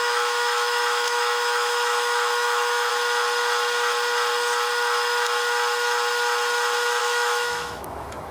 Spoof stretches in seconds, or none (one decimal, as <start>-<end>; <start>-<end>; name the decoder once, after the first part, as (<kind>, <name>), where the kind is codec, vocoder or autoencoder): 0.0-2.9 (autoencoder, DAC-VAE); 7.0-8.3